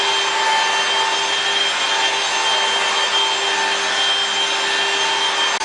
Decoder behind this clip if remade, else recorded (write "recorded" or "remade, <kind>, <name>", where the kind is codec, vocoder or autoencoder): recorded